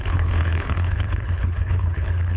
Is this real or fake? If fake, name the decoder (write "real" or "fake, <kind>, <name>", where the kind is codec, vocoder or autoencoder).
fake, codec, HILCodec